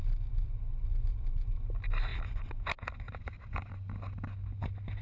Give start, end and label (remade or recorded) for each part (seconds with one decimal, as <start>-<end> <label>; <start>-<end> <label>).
0.0-5.0 recorded